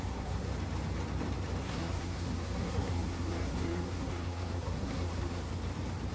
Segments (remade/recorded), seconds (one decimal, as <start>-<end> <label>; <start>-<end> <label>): 0.0-0.5 remade; 0.5-1.6 recorded; 1.6-5.5 remade; 5.5-6.1 recorded